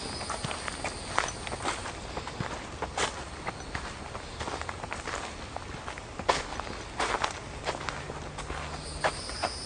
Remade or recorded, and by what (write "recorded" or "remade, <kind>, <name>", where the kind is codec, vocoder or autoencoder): recorded